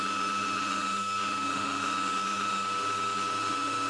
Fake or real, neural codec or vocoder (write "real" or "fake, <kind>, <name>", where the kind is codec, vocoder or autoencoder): fake, autoencoder, DAC-VAE